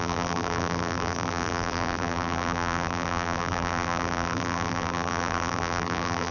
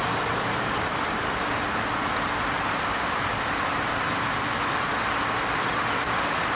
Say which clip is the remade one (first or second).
first